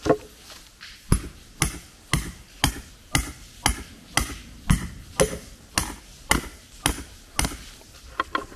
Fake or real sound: real